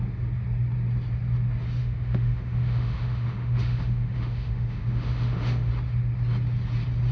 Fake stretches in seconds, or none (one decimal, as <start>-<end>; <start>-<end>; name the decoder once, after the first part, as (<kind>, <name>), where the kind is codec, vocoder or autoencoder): 1.8-5.7 (autoencoder, DAC-VAE)